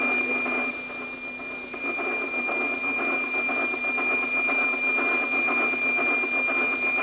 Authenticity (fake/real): real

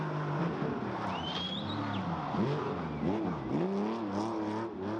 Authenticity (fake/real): real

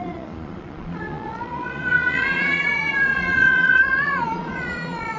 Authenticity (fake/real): fake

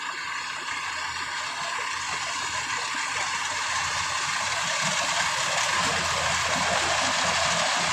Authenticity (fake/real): real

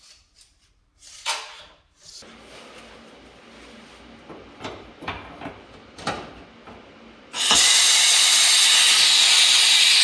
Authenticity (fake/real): real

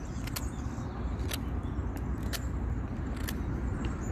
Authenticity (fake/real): real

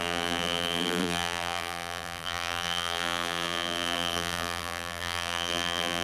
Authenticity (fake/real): fake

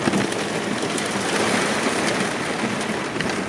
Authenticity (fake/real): real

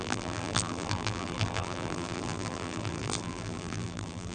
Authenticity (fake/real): fake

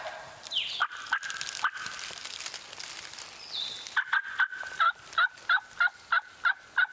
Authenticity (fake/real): real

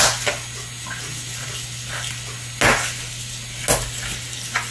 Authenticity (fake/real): real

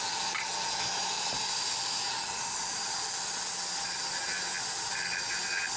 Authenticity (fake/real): real